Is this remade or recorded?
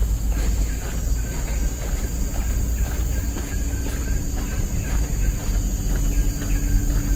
recorded